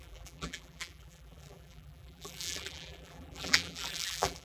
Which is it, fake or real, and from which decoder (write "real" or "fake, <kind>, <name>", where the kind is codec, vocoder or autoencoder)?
fake, vocoder, BigVGAN v2